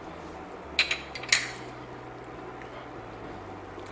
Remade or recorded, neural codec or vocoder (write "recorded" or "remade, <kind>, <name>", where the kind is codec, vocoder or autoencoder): recorded